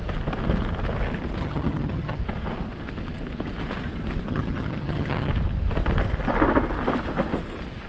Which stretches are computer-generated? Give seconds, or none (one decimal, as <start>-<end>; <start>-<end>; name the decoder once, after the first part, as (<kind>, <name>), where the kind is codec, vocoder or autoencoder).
1.4-2.2 (vocoder, HiFi-GAN); 4.3-5.3